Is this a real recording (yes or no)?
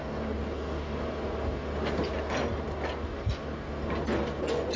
yes